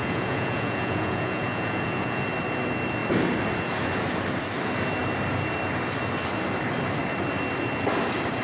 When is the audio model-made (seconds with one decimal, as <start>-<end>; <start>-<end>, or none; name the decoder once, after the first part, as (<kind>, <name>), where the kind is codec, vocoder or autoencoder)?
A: 0.0-2.2 (vocoder, Vocos)